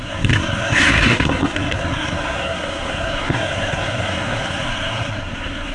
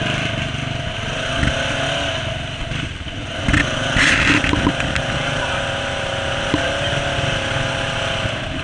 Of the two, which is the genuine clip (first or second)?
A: second